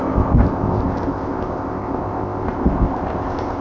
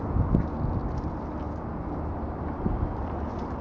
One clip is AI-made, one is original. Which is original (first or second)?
second